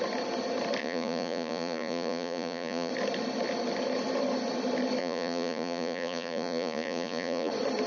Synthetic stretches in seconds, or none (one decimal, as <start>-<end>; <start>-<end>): 0.8-2.9; 5.0-7.5